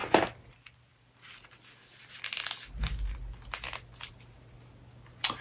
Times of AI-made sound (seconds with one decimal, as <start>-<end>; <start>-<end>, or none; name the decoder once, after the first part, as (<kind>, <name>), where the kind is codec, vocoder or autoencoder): none